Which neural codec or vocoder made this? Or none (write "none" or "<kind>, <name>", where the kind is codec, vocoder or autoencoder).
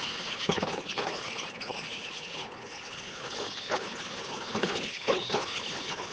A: codec, HILCodec